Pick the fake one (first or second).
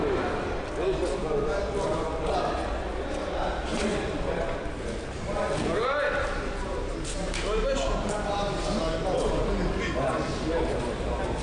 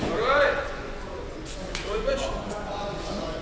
second